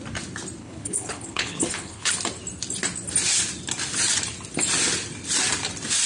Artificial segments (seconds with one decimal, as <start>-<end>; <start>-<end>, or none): 0.6-2.1